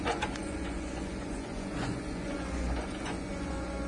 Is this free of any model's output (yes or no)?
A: no